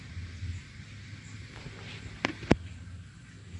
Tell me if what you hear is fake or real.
real